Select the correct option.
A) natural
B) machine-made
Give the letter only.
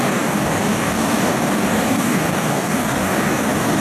B